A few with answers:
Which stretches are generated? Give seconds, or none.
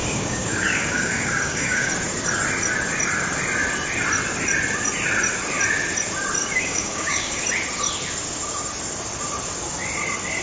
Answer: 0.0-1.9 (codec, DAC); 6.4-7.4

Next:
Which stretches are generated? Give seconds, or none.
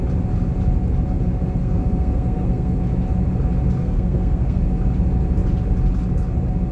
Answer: 1.6-2.8 (codec, SNAC); 3.8-4.6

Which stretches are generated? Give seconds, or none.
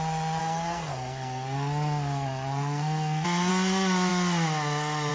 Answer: 0.4-3.5 (codec, SNAC)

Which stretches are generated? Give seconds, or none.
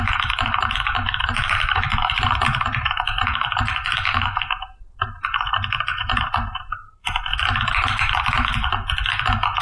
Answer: 0.0-7.3 (vocoder, BigVGAN v2)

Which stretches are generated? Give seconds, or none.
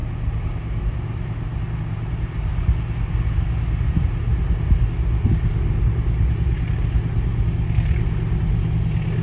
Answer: none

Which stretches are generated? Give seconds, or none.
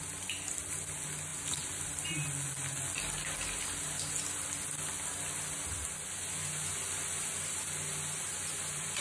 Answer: 8.3-9.0 (vocoder, BigVGAN v2)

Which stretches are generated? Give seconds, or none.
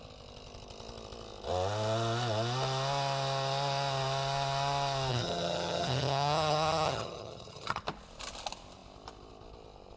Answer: 5.1-7.8 (vocoder, HiFi-GAN)